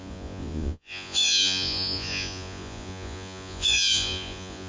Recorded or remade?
remade